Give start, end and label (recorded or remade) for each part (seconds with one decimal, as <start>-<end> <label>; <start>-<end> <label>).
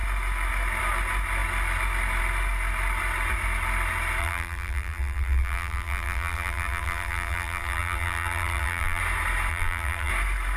0.0-4.2 recorded; 4.2-9.0 remade; 9.0-9.5 recorded; 9.5-10.1 remade; 10.1-10.6 recorded